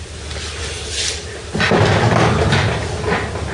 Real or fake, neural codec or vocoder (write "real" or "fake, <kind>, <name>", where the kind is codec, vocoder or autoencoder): real